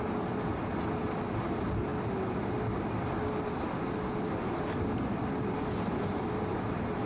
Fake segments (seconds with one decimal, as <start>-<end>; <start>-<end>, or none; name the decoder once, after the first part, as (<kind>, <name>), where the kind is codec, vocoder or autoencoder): 0.0-1.9 (vocoder, BigVGAN v2); 3.5-7.1